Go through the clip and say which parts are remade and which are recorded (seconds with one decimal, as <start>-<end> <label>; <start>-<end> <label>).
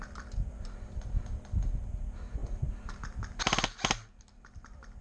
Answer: 0.0-5.0 recorded